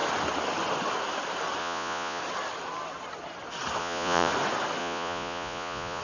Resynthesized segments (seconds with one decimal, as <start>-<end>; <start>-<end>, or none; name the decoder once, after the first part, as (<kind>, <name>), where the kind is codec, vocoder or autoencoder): 1.6-2.2 (vocoder, Vocos); 3.8-4.3; 4.8-6.0